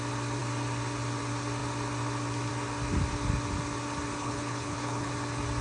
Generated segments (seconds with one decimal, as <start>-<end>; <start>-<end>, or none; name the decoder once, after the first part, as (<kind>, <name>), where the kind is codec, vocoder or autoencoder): 4.2-5.1 (codec, HILCodec)